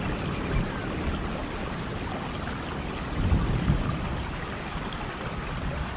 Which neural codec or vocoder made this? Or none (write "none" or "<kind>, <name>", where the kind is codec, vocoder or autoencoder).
none